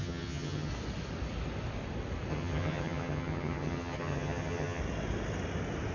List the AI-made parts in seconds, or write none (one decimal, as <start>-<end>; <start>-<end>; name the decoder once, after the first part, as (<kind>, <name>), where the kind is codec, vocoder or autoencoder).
0.0-0.7 (vocoder, HiFi-GAN); 2.3-4.8